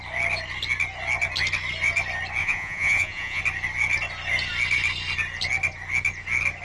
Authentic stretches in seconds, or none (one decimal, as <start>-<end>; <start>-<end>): 0.0-2.4; 3.4-6.6